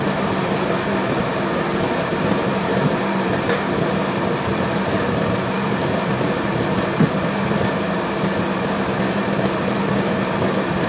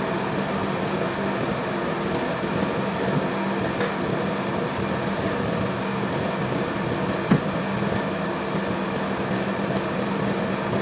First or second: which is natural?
second